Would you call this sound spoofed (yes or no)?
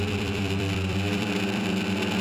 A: yes